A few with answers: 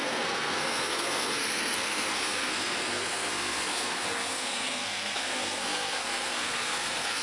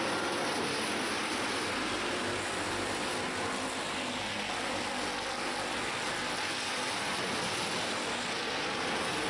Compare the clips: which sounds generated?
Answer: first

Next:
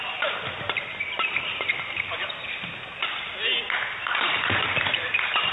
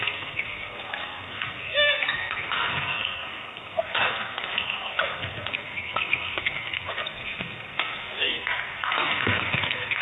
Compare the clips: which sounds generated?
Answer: second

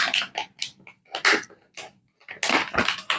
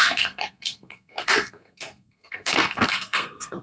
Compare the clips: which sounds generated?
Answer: second